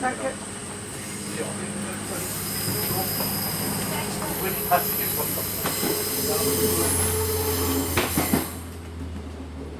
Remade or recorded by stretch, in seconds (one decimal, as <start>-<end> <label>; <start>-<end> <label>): 0.0-9.8 recorded